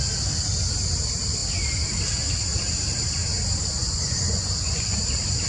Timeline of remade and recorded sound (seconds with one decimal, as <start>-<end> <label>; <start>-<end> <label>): 0.0-3.8 recorded; 3.8-5.0 remade; 5.0-5.5 recorded